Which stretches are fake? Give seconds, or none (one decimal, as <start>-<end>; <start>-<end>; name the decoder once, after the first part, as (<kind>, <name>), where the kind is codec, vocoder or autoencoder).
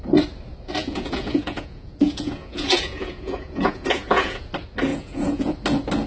0.8-4.5 (vocoder, Vocos); 4.9-5.5